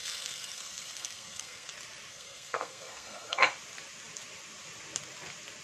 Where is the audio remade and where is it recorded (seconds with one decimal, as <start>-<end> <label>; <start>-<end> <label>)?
0.0-1.7 remade; 1.7-2.1 recorded; 2.1-3.5 remade; 3.5-5.6 recorded